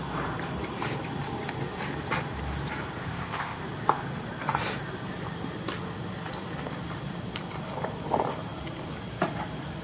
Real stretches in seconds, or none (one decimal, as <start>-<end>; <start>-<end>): 0.0-3.0; 3.6-9.8